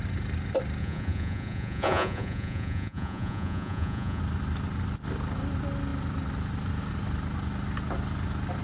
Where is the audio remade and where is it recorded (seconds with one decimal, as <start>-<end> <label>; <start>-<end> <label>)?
0.0-0.8 recorded; 0.8-4.2 remade; 4.2-8.6 recorded